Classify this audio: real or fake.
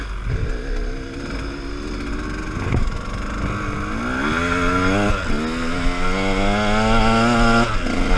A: real